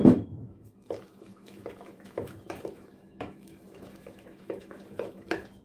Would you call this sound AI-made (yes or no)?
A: yes